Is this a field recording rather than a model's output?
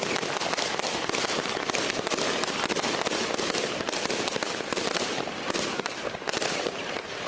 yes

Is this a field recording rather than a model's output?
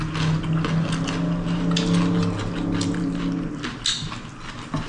yes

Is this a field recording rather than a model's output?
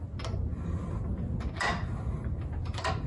yes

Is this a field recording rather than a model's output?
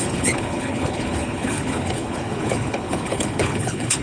no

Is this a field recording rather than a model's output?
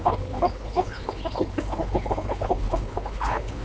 no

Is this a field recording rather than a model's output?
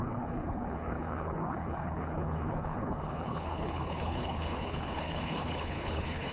no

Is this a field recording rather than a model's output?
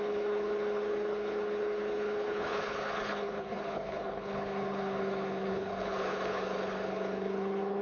no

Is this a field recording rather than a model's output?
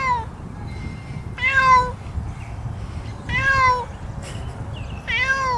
yes